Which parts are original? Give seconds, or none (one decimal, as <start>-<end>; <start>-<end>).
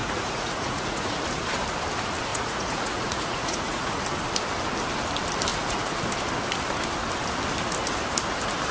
1.1-2.3; 4.0-5.5; 6.0-8.7